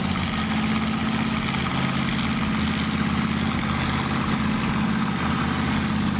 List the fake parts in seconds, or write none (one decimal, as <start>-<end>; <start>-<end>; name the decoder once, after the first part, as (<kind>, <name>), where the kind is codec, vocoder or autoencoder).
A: none